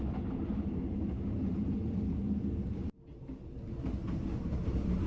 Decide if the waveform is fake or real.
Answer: real